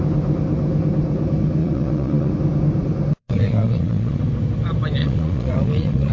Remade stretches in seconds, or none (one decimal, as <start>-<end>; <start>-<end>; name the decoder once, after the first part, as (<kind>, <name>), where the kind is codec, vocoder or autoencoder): 1.6-2.3 (vocoder, Vocos); 3.2-4.2; 5.0-6.1